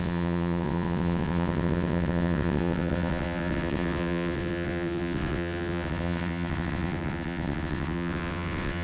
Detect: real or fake fake